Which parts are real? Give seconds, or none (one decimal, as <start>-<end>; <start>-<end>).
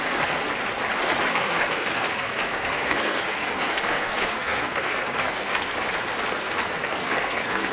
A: 0.4-1.3; 5.7-6.3